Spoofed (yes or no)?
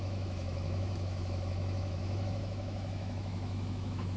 yes